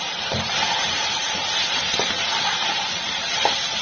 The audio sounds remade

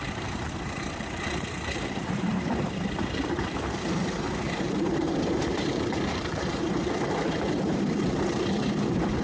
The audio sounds remade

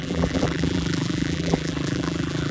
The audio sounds remade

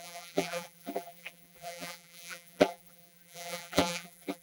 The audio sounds remade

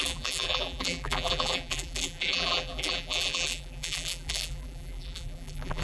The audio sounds remade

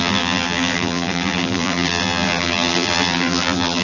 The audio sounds remade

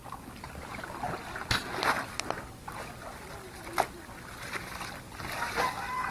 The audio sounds remade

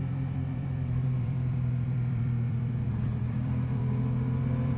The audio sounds remade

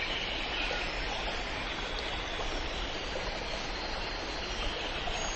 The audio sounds remade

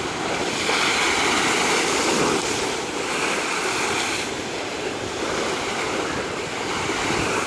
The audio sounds remade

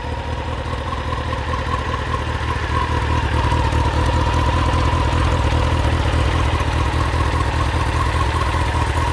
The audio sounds recorded